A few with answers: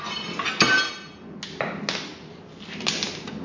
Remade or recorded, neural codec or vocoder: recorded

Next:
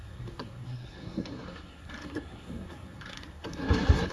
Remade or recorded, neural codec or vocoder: remade, codec, SNAC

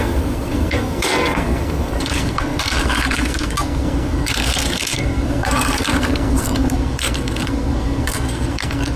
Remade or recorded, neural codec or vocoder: remade, codec, SNAC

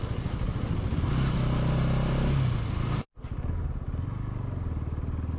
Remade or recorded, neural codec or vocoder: recorded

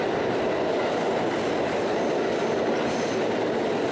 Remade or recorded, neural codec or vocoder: recorded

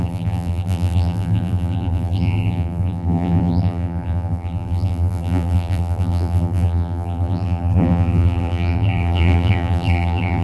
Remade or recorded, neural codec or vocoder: remade, vocoder, BigVGAN v2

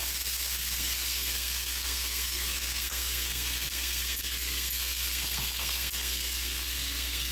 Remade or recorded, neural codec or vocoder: remade, codec, SNAC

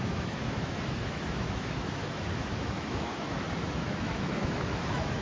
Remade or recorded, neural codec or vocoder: remade, autoencoder, DAC-VAE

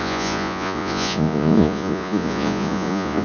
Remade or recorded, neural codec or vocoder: remade, vocoder, Vocos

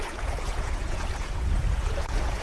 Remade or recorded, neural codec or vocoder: remade, vocoder, Vocos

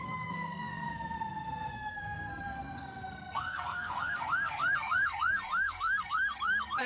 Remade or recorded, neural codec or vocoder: remade, codec, SNAC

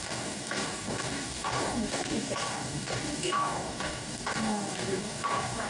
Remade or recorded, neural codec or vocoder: remade, codec, DAC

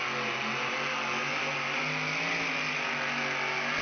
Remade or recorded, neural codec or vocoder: recorded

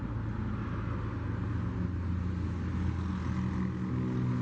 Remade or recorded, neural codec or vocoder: recorded